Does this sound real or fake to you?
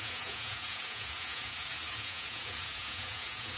fake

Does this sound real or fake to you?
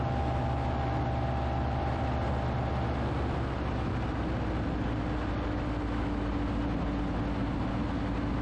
real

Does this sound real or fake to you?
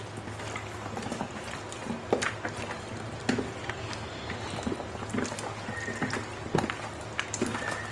real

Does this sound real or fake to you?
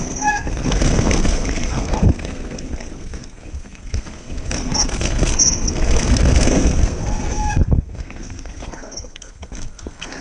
fake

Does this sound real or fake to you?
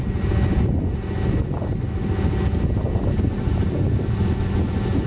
real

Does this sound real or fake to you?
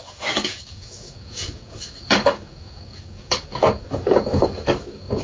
fake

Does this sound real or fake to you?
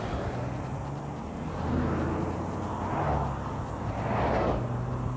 real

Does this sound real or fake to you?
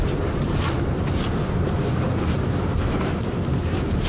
fake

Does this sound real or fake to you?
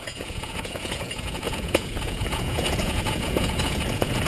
fake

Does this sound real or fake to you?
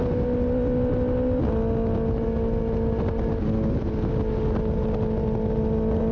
real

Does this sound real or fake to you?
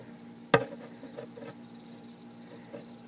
real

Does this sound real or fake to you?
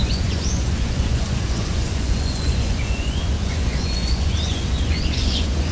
fake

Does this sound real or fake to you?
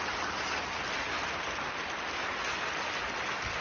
real